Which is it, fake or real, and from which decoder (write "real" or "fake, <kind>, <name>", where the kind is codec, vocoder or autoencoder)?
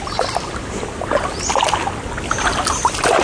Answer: real